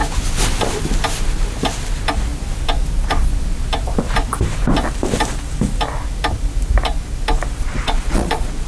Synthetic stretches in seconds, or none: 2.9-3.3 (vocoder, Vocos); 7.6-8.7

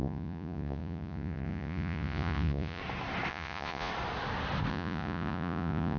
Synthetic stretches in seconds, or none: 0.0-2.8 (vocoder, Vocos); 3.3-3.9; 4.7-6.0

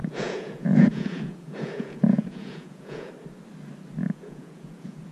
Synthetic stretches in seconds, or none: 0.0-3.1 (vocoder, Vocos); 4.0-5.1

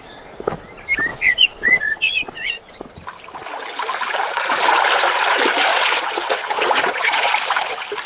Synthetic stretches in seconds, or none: 1.1-2.9 (vocoder, Vocos); 5.7-7.3

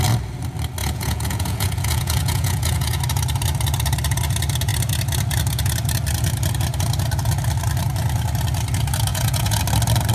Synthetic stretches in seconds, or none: 0.8-3.0 (vocoder, Vocos); 9.1-9.6

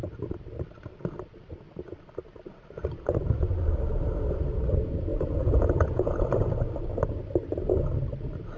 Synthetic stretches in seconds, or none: 5.1-6.5 (vocoder, Vocos)